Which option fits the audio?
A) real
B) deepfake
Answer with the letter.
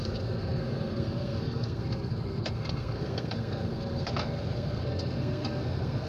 B